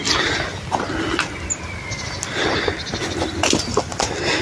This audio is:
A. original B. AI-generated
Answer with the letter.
A